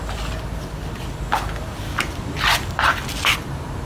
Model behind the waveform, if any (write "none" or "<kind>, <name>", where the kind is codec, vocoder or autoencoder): none